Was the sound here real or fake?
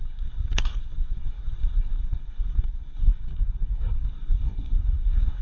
fake